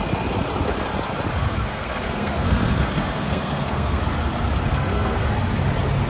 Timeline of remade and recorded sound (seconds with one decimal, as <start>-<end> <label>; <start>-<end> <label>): 0.0-1.4 recorded; 1.4-4.0 remade; 4.0-4.7 recorded; 4.7-5.3 remade; 5.3-6.1 recorded